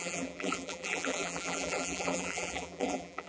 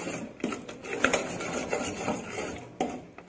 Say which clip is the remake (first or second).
first